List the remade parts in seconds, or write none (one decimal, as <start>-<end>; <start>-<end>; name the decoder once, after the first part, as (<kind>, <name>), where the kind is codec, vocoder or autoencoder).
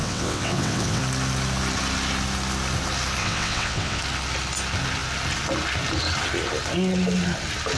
0.0-1.0 (vocoder, WaveNeXt); 3.2-4.0